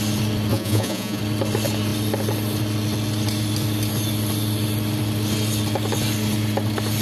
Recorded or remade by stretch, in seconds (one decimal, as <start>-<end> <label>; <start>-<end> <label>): 0.0-0.5 recorded; 0.5-1.2 remade; 1.2-7.0 recorded